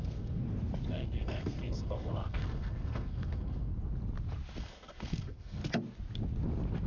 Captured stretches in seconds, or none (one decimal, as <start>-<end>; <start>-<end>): 0.4-0.9; 3.7-4.5; 5.6-6.9